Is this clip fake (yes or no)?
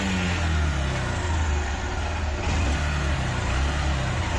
no